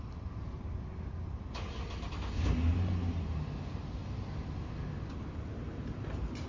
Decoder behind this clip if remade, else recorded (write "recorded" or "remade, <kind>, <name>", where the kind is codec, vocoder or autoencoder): recorded